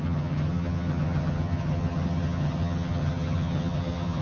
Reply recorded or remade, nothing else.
remade